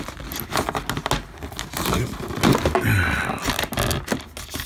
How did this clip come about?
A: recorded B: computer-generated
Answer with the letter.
A